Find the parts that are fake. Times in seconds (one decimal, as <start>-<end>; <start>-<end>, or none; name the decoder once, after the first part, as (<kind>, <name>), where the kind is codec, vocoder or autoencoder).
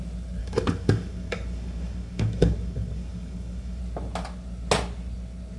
0.4-3.8 (codec, DAC)